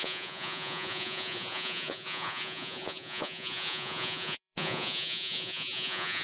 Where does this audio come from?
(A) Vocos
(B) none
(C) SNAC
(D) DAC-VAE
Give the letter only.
A